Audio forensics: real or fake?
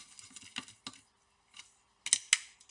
real